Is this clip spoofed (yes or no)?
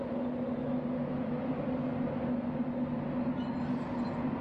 no